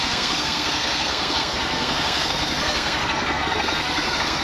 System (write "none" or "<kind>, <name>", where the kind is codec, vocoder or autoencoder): codec, SNAC